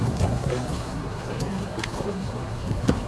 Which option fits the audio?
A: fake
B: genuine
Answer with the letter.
A